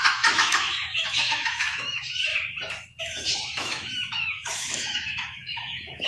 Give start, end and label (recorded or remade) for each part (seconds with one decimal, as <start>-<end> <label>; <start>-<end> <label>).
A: 0.0-2.3 remade; 2.3-3.0 recorded; 3.0-6.1 remade